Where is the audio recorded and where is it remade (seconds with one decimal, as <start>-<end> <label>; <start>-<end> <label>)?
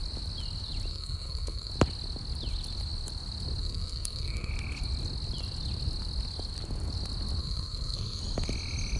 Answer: 0.0-0.9 recorded; 0.9-1.7 remade; 1.7-3.6 recorded; 3.6-4.5 remade; 4.5-7.4 recorded; 7.4-8.2 remade; 8.2-9.0 recorded